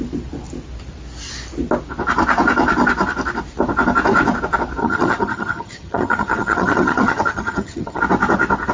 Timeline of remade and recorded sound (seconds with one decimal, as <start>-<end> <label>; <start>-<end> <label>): 0.0-4.8 recorded; 4.8-8.0 remade; 8.0-8.7 recorded